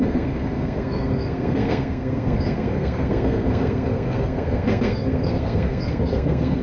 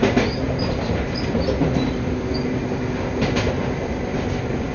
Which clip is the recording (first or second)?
second